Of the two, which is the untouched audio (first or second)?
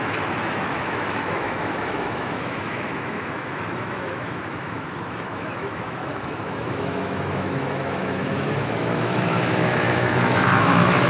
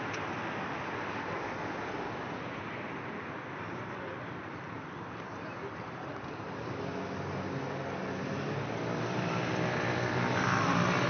second